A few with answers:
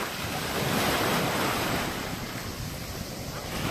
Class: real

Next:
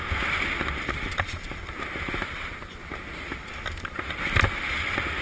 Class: real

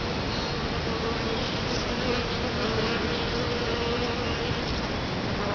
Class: real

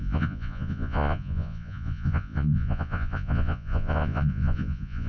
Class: fake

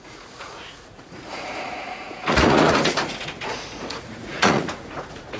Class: fake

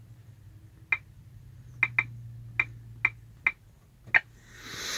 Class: real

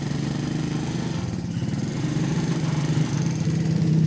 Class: fake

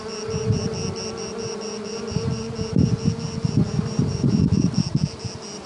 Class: real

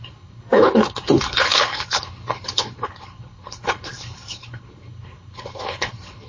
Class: fake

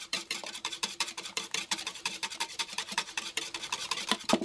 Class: fake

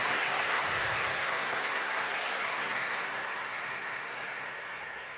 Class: fake